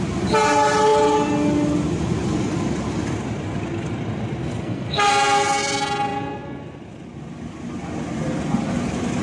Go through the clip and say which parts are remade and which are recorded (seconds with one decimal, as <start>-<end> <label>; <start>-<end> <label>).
0.0-4.4 recorded; 4.4-5.1 remade; 5.1-9.2 recorded